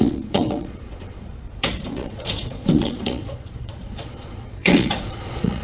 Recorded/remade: remade